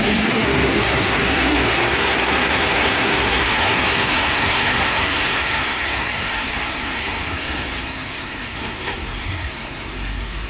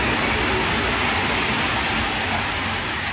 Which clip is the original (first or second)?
second